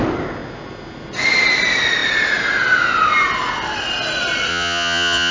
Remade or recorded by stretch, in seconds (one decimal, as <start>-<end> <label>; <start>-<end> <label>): 0.0-4.5 recorded; 4.5-5.3 remade